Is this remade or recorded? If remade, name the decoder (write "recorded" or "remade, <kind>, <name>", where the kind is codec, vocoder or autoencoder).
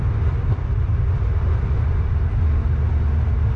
recorded